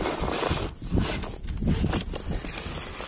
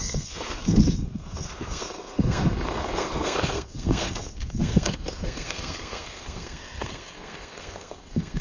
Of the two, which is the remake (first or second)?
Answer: second